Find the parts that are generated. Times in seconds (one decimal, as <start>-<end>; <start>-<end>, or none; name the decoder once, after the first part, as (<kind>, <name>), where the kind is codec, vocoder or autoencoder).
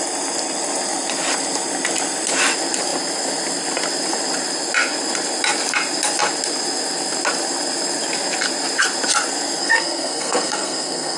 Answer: 9.6-11.2 (codec, SNAC)